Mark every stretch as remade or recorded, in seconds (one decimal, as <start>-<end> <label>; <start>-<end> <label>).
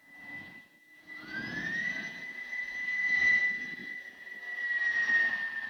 0.0-3.4 remade; 3.4-3.8 recorded; 3.8-4.6 remade; 4.6-5.7 recorded